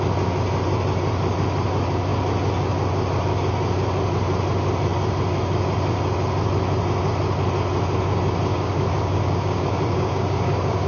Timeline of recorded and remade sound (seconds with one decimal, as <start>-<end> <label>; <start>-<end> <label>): 0.0-8.5 recorded; 8.5-10.9 remade